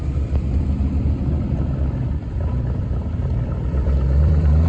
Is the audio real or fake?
fake